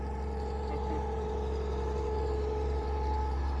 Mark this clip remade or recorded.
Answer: remade